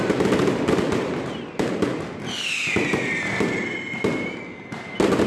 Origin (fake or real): real